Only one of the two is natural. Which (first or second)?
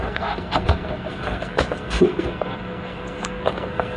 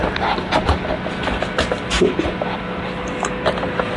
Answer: second